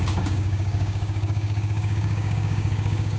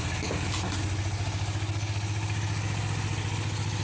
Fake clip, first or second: first